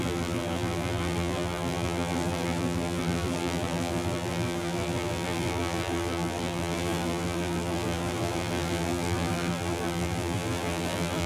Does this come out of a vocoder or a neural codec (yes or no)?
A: yes